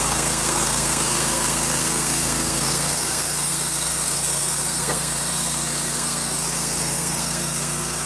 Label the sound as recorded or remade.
remade